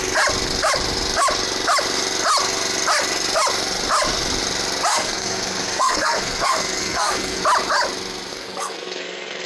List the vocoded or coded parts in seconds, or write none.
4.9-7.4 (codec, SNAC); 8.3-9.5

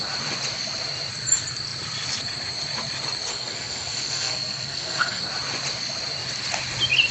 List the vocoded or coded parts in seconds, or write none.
3.3-5.2 (codec, SNAC)

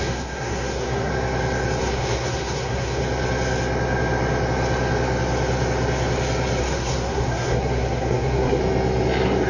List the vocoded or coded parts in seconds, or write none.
0.0-1.1 (codec, SNAC); 1.8-3.0; 6.6-8.6